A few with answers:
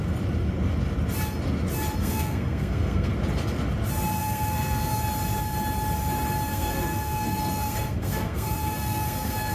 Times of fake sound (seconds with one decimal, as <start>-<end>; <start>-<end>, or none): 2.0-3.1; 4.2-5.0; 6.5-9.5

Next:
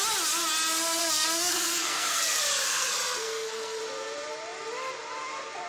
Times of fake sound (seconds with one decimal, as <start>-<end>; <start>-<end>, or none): 1.0-3.8

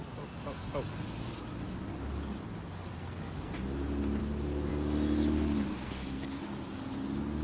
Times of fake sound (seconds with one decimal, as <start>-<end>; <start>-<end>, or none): 2.9-3.5; 5.7-6.4